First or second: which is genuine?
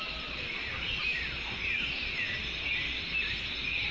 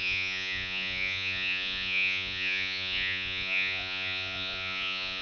first